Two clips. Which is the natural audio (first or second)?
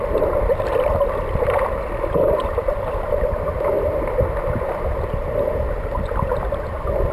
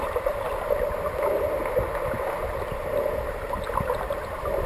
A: second